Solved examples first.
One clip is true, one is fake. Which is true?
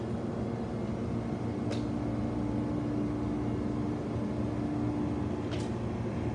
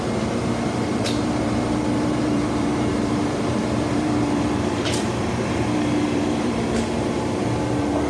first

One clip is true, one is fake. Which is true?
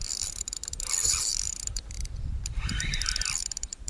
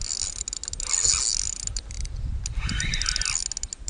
second